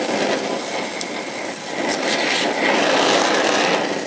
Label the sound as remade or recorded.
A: recorded